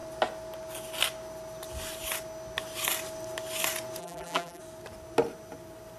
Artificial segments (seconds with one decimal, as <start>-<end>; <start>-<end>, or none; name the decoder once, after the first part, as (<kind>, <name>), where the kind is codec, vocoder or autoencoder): 4.0-4.6 (vocoder, BigVGAN v2)